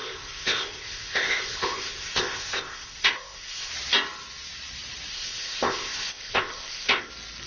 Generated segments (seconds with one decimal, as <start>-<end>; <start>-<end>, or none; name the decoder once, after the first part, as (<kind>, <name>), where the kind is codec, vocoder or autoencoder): 0.0-3.7 (codec, ZipCodec); 5.1-7.1